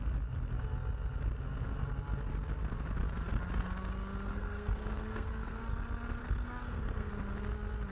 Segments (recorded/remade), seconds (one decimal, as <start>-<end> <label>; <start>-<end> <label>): 0.0-4.3 recorded; 4.3-5.6 remade; 5.6-6.2 recorded; 6.2-7.1 remade; 7.1-7.9 recorded